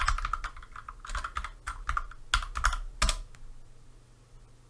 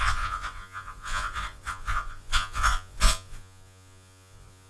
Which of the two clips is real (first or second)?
first